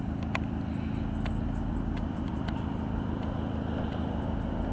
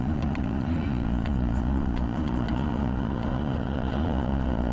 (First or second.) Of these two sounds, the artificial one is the second